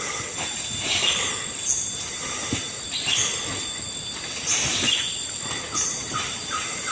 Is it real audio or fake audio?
real